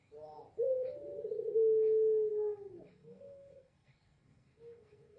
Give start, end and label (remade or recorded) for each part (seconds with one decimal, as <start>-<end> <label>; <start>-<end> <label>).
0.0-2.3 recorded; 2.3-5.2 remade